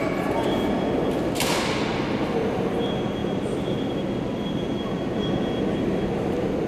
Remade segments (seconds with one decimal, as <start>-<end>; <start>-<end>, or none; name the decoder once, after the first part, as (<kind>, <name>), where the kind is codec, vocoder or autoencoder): none